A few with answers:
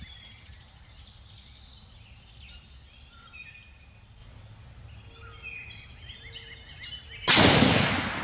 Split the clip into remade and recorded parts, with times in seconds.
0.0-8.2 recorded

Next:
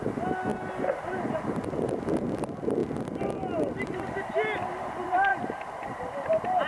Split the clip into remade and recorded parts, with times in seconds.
0.0-6.7 recorded

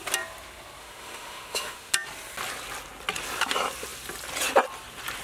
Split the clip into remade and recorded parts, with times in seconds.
0.0-0.8 recorded; 0.8-1.9 remade; 1.9-5.2 recorded

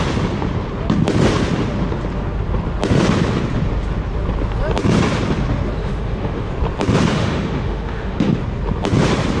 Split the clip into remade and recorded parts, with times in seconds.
0.0-5.8 recorded; 5.8-6.5 remade; 6.5-7.1 recorded; 7.1-8.4 remade; 8.4-9.4 recorded